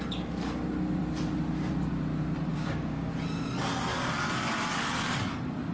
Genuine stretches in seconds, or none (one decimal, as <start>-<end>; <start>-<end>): 0.0-2.5; 3.1-5.7